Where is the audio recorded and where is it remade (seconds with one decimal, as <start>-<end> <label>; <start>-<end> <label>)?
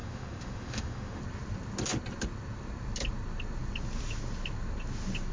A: 0.0-1.2 remade; 1.2-5.3 recorded